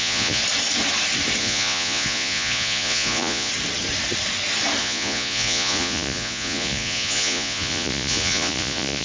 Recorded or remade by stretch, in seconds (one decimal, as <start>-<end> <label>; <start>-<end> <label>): 0.0-0.4 remade; 0.4-1.4 recorded; 1.4-3.5 remade; 3.5-4.8 recorded; 4.8-9.0 remade